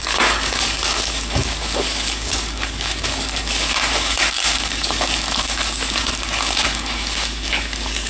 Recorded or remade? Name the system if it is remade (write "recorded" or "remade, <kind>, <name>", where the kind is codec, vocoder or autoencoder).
remade, codec, DAC